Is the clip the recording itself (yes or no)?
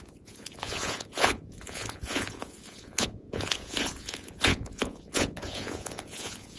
no